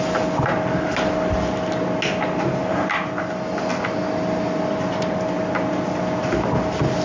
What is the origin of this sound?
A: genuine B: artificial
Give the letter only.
A